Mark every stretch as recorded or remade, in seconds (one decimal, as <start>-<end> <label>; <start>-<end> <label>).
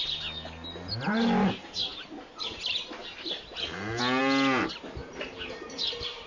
0.0-5.0 recorded; 5.0-6.3 remade